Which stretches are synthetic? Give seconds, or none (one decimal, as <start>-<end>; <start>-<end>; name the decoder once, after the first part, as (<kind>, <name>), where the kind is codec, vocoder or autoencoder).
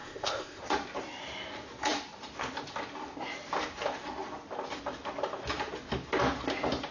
0.0-0.6 (codec, ZipCodec)